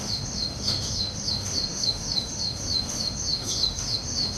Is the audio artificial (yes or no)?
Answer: yes